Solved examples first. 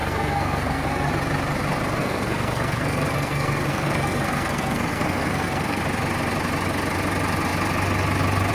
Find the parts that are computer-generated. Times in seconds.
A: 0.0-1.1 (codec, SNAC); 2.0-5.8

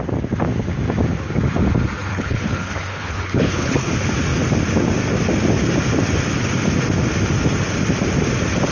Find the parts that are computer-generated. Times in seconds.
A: 2.1-3.9 (codec, HILCodec)

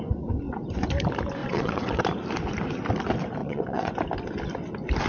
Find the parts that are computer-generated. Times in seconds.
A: 1.4-2.0 (vocoder, WaveNeXt); 3.4-3.9

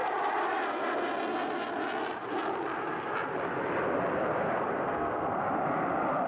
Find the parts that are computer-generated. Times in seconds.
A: 4.8-5.4 (codec, SNAC)

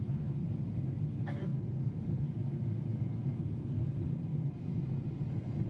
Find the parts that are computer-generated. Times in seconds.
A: 0.0-0.4 (codec, SNAC); 1.1-4.6; 5.3-5.7

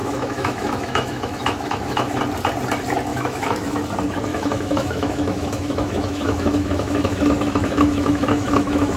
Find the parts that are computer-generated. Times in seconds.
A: 0.0-2.2 (autoencoder, DAC-VAE); 3.1-3.8; 4.3-9.0

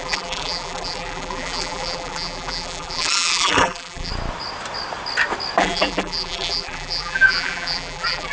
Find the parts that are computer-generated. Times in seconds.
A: 0.0-4.1 (vocoder, BigVGAN v2); 5.6-8.3

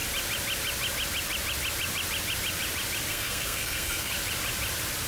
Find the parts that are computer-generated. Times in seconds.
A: 3.1-4.1 (codec, SNAC)